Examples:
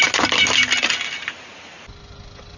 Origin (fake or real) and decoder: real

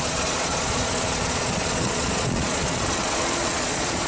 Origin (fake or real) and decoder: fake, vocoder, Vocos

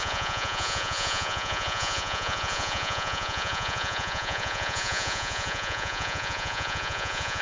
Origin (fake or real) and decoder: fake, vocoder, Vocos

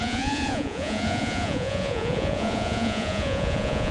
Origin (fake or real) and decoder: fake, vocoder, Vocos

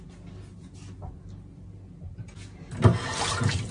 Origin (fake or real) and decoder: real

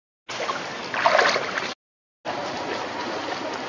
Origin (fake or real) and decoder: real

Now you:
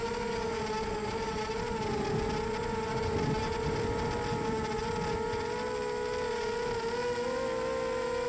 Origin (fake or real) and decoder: real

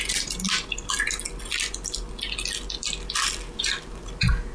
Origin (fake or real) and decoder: real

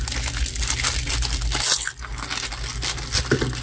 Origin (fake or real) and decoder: real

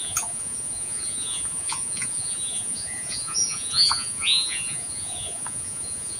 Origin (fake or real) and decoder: fake, vocoder, Vocos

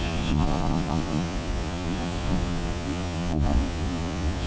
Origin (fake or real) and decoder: fake, vocoder, Vocos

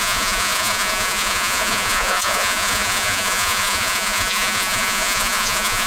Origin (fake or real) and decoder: fake, vocoder, Vocos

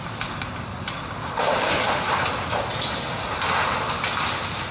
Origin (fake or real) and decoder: real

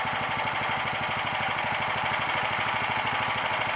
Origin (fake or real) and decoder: real